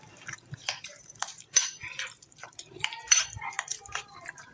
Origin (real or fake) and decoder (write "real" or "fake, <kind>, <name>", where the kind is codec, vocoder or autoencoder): fake, vocoder, BigVGAN v2